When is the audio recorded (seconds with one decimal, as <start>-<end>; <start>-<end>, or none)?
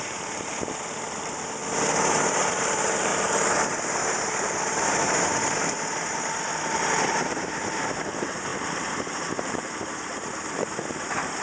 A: 1.6-2.6